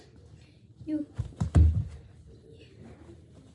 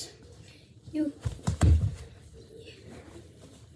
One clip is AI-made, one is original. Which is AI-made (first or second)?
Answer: second